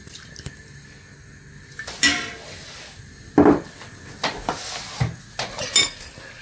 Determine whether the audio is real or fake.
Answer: real